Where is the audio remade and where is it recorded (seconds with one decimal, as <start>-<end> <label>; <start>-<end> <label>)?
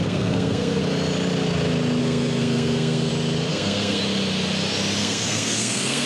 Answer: 0.0-0.8 remade; 0.8-2.0 recorded; 2.0-3.1 remade; 3.1-3.5 recorded; 3.5-4.0 remade; 4.0-5.0 recorded; 5.0-6.1 remade